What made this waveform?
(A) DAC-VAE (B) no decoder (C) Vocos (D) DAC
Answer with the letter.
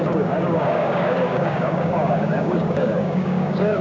D